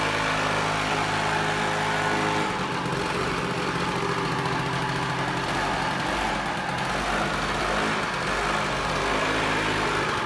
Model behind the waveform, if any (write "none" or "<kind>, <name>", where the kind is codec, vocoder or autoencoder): none